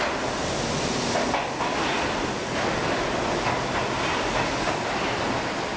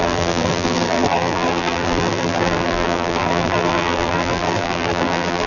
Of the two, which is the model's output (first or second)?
second